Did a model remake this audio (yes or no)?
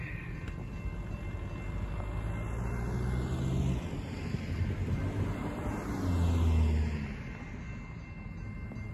no